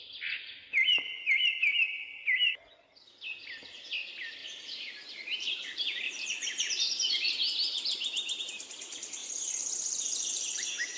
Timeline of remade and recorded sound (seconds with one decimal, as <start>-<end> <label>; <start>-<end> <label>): 0.0-4.4 recorded; 4.4-8.4 remade; 8.4-9.2 recorded; 9.2-11.0 remade